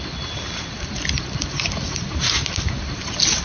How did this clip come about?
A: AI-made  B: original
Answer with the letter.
B